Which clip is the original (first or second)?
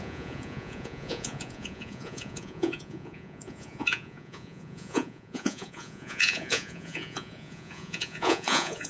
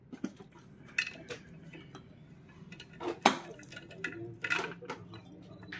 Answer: second